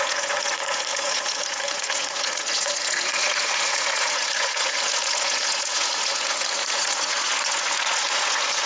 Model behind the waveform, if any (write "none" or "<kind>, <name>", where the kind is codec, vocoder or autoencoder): vocoder, Vocos